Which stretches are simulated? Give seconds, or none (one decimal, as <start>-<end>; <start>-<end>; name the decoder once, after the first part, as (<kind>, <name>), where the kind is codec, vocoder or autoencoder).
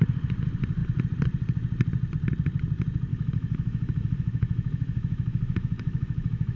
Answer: 3.1-6.6 (autoencoder, DAC-VAE)